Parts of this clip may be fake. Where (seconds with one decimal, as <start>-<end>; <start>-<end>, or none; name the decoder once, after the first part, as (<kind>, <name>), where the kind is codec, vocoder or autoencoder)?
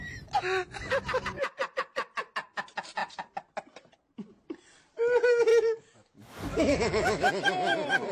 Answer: 5.5-7.3 (codec, DAC)